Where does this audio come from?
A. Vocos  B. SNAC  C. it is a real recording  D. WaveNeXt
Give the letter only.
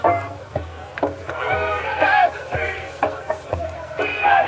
B